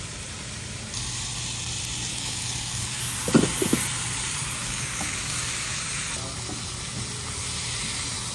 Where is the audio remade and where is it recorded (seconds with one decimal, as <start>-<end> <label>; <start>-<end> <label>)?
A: 0.0-2.1 recorded; 2.1-3.0 remade; 3.0-4.6 recorded; 4.6-5.8 remade; 5.8-8.3 recorded